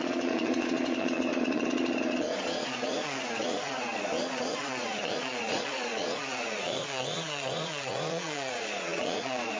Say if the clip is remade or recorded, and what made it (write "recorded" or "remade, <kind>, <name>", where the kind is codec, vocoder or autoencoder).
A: remade, vocoder, Vocos